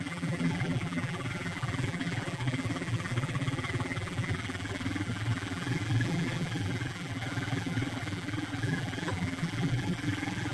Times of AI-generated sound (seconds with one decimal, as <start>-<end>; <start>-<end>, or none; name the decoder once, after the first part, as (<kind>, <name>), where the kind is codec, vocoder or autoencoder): 0.0-10.5 (vocoder, BigVGAN v2)